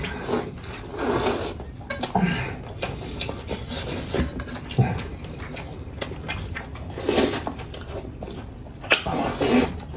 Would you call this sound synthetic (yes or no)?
no